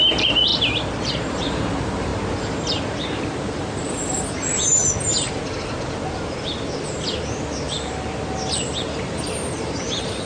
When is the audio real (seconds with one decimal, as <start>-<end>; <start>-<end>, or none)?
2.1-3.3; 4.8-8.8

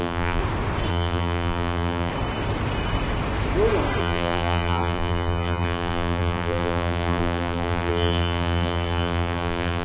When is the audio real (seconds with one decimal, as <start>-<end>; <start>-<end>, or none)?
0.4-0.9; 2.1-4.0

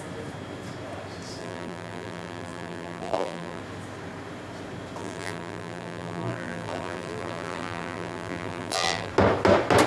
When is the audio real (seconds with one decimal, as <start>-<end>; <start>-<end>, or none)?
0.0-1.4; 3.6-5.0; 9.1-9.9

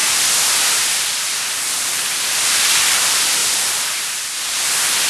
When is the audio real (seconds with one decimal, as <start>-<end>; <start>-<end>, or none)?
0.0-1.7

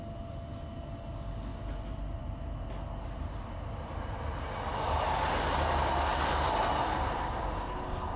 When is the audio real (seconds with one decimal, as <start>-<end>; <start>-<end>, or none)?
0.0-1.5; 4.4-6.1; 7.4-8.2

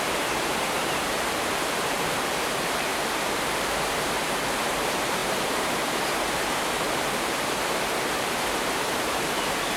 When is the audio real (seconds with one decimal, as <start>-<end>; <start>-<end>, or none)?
2.9-3.8